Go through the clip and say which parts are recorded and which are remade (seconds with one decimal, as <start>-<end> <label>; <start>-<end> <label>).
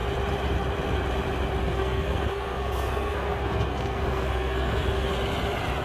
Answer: 0.0-1.6 recorded; 1.6-5.1 remade; 5.1-5.8 recorded